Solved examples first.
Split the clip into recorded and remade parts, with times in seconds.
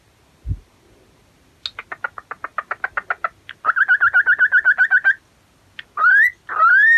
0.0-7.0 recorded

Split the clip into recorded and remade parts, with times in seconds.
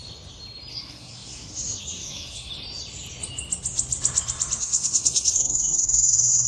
0.0-0.7 recorded; 0.7-2.5 remade; 2.5-4.6 recorded; 4.6-6.5 remade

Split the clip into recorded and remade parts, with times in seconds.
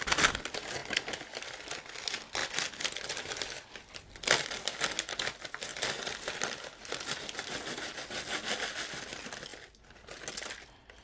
0.0-11.0 recorded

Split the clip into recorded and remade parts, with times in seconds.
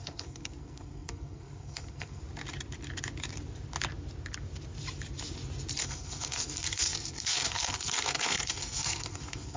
0.0-2.2 remade; 2.2-5.8 recorded; 5.8-9.6 remade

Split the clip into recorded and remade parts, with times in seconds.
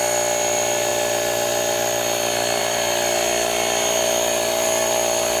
0.0-5.4 recorded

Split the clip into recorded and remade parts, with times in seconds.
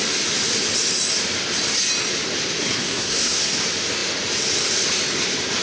0.0-2.6 recorded; 2.6-3.5 remade; 3.5-5.6 recorded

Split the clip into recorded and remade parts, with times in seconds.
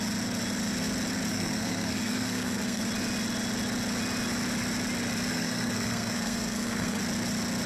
0.0-1.3 recorded; 1.3-2.8 remade; 2.8-5.3 recorded; 5.3-7.0 remade; 7.0-7.7 recorded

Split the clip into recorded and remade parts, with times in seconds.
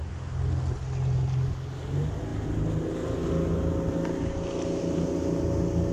0.0-5.9 recorded